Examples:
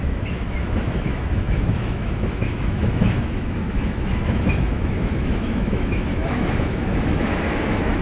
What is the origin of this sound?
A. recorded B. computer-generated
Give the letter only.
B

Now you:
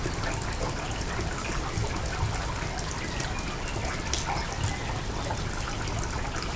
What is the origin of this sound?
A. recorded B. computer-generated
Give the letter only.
A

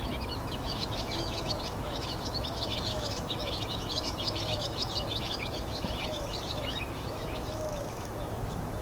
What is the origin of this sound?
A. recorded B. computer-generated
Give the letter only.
B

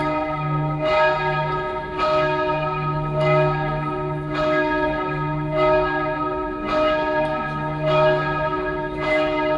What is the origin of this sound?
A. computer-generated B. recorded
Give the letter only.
A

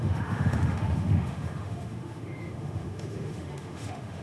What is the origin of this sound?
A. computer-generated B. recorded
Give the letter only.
A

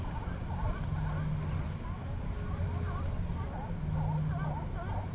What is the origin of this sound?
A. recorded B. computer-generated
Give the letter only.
A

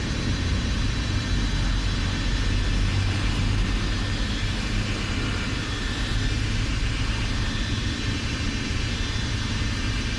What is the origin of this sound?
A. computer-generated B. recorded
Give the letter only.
B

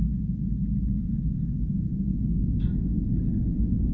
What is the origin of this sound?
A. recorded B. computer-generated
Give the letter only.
A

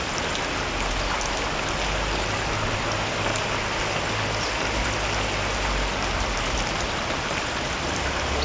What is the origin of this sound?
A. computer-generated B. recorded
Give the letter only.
B